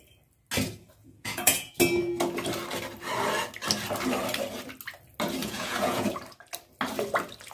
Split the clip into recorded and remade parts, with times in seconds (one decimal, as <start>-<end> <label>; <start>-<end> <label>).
0.0-1.0 recorded; 1.0-1.7 remade; 1.7-5.4 recorded; 5.4-6.1 remade; 6.1-7.5 recorded